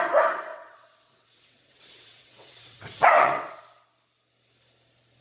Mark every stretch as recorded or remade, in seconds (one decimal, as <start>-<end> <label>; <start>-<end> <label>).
0.0-0.5 recorded; 0.5-3.6 remade; 3.6-5.2 recorded